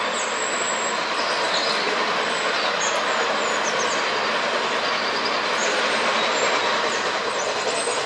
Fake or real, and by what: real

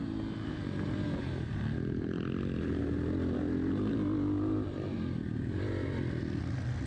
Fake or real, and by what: real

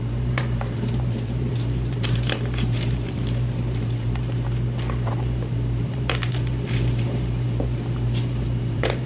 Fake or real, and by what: fake, vocoder, BigVGAN v2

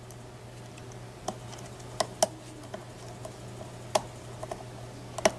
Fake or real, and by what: real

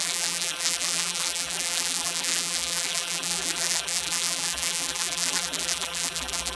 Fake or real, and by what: fake, vocoder, BigVGAN v2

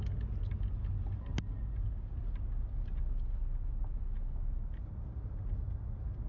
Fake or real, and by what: real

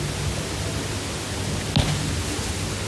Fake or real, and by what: real